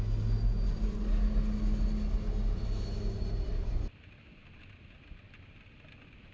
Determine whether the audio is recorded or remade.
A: recorded